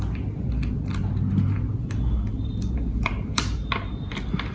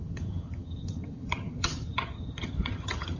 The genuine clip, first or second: first